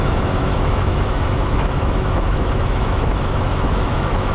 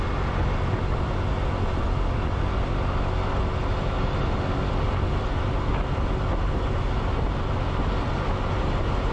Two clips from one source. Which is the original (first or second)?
second